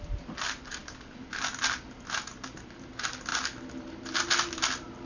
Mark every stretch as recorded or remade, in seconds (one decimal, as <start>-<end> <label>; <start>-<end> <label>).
0.0-5.1 recorded